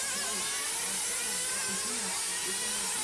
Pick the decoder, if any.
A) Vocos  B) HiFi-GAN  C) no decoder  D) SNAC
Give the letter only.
C